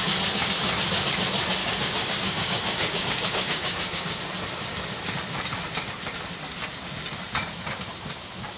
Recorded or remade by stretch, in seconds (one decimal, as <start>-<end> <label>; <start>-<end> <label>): 0.0-1.6 recorded; 1.6-4.2 remade; 4.2-8.6 recorded